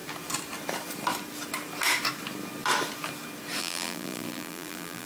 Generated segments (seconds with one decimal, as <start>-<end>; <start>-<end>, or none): 3.6-5.1

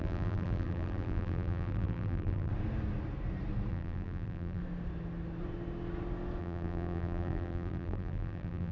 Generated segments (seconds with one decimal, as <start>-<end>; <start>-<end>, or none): 0.0-2.5; 3.7-4.6; 6.4-8.7

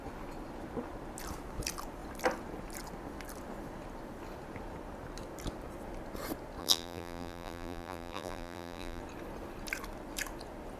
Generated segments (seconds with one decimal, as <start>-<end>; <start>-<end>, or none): 6.6-9.0

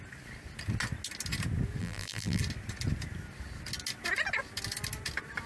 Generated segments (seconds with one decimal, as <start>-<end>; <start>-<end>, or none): 1.8-2.4

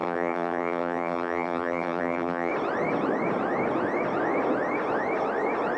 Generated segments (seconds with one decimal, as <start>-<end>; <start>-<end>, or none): 0.0-2.5

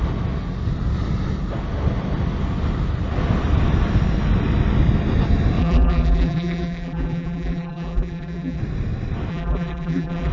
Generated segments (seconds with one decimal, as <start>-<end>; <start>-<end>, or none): 5.6-8.6; 9.3-10.3